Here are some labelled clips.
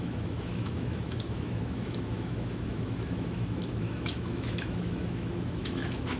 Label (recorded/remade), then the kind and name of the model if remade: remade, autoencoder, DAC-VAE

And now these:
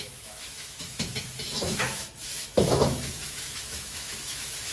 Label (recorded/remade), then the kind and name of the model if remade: remade, autoencoder, DAC-VAE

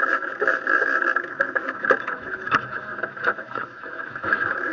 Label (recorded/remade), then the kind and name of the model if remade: remade, autoencoder, DAC-VAE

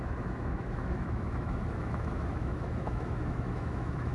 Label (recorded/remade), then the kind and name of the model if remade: remade, autoencoder, DAC-VAE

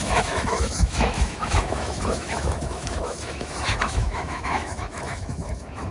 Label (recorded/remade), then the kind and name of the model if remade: remade, autoencoder, DAC-VAE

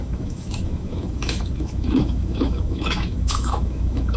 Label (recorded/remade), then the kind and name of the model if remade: remade, autoencoder, DAC-VAE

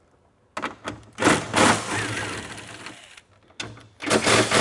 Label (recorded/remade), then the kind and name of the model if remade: recorded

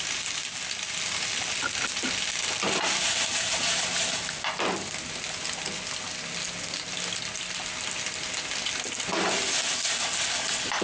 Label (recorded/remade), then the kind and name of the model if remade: recorded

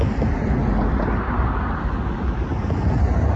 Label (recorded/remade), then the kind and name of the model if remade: recorded